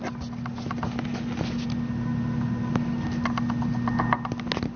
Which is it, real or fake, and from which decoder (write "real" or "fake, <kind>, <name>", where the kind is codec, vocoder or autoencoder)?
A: real